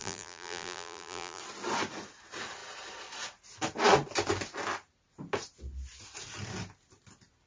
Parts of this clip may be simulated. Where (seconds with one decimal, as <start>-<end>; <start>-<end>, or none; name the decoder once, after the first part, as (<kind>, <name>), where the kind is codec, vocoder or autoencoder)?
0.0-1.4 (vocoder, BigVGAN v2)

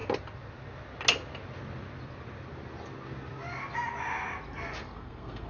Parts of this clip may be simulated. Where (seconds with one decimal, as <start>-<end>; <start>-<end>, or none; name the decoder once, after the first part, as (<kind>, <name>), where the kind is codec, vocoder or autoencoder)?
4.8-5.5 (codec, SNAC)

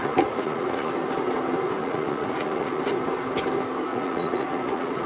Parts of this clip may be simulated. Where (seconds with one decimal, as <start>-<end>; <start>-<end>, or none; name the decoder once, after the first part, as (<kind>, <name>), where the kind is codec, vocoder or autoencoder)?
0.0-0.9 (vocoder, Vocos); 1.8-2.8; 3.9-5.1

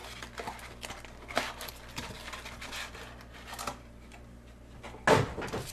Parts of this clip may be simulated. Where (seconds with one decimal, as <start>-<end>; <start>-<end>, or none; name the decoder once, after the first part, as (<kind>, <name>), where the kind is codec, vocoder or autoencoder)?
none

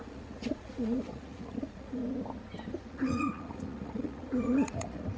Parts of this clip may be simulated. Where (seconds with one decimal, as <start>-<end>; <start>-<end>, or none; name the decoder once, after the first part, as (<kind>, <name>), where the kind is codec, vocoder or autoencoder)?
0.0-2.0 (vocoder, Vocos); 2.7-5.2

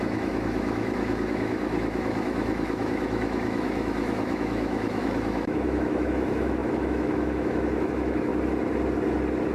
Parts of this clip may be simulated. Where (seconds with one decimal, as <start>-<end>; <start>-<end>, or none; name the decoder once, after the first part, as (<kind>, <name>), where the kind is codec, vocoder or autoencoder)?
0.0-8.3 (autoencoder, DAC-VAE)

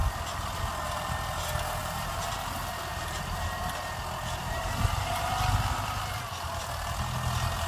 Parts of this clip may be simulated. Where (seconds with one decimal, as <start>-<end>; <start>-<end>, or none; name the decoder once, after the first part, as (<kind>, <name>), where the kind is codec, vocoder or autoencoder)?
1.8-2.3 (vocoder, BigVGAN v2); 2.9-3.6; 4.4-6.0